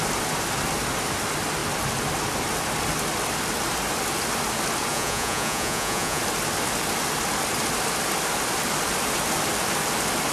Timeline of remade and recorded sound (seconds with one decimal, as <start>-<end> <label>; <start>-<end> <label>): 0.0-4.9 recorded; 4.9-6.2 remade; 6.2-10.3 recorded